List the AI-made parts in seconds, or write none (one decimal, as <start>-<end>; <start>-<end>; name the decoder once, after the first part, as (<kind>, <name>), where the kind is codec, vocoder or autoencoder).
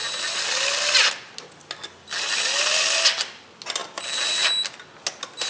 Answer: none